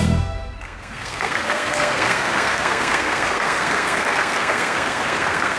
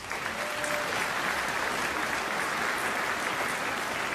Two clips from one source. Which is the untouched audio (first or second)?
second